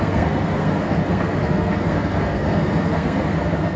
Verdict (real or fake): fake